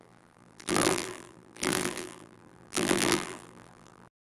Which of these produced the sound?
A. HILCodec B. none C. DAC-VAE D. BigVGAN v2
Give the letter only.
D